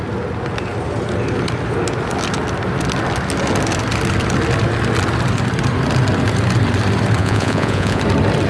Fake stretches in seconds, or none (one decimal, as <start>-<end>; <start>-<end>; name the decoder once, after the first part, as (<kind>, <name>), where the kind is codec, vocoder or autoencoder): 7.2-8.0 (vocoder, Vocos)